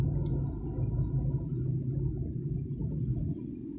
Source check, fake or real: real